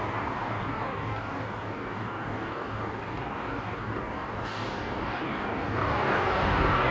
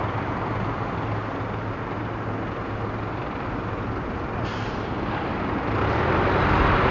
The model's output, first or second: first